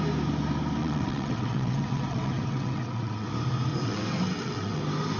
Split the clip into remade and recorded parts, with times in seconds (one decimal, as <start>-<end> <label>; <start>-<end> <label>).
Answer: 0.0-0.8 recorded; 0.8-3.3 remade; 3.3-3.7 recorded; 3.7-4.8 remade; 4.8-5.2 recorded